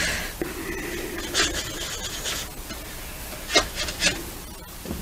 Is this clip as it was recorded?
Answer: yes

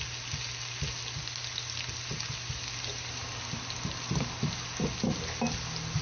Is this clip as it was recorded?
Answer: yes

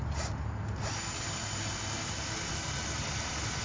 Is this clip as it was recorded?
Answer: yes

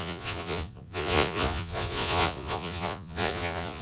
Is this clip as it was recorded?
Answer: no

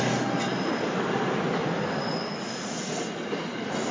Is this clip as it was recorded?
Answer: yes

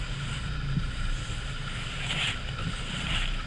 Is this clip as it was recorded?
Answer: yes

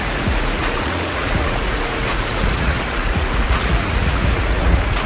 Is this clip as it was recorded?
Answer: no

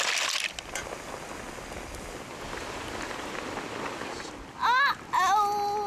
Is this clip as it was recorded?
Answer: yes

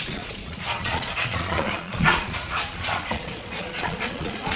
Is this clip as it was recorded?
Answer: no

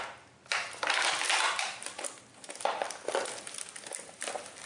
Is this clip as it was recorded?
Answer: yes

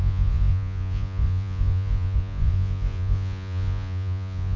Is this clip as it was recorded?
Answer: no